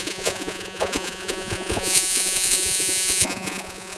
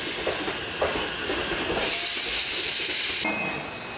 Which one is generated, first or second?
first